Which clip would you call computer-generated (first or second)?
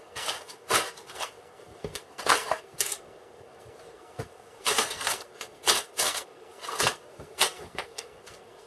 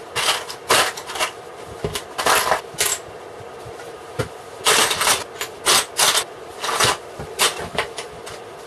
first